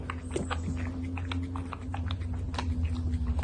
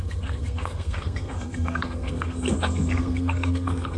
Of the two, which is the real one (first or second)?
first